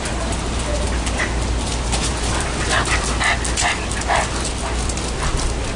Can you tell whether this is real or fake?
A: real